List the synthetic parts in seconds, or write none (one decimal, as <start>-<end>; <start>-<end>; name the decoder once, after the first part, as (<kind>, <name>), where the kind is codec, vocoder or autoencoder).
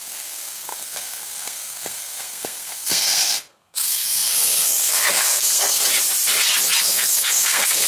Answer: 0.0-5.8 (codec, SNAC); 6.8-7.9